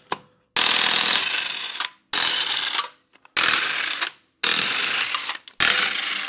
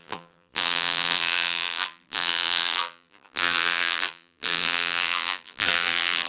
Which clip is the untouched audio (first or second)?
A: first